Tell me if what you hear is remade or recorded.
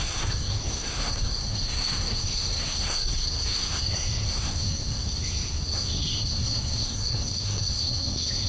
remade